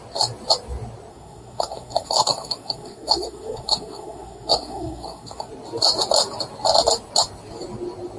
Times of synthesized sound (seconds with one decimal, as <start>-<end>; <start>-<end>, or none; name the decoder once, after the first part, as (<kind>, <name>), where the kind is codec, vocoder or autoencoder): 1.1-5.5 (codec, SNAC)

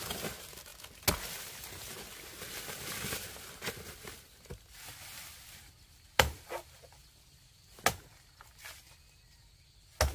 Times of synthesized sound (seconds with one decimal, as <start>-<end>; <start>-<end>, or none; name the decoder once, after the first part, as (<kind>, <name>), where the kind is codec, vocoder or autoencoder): none

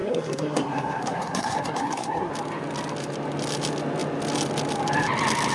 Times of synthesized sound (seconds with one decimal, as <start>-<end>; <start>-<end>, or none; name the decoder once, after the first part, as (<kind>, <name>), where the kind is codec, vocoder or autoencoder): 0.0-2.3 (codec, SNAC)

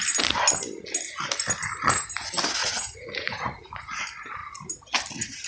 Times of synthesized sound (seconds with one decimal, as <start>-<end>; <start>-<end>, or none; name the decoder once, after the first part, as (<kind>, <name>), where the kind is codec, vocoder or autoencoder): 2.6-4.0 (vocoder, Vocos)

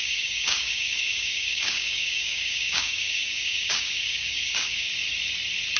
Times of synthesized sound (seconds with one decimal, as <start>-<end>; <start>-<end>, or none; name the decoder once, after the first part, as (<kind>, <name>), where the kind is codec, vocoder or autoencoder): 0.0-4.9 (codec, DAC)